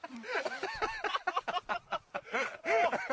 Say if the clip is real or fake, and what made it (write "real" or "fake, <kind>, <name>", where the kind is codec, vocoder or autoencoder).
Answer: real